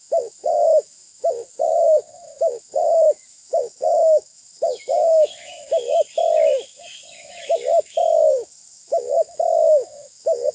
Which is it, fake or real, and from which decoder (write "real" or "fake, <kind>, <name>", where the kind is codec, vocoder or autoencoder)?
fake, autoencoder, DAC-VAE